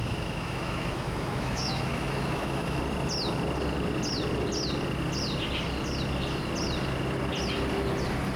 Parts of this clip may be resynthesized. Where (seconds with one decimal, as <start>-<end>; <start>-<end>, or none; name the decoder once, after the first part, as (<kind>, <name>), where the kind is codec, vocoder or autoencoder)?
0.0-2.8 (autoencoder, DAC-VAE)